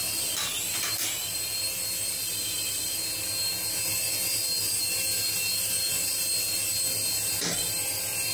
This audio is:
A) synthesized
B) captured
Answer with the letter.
B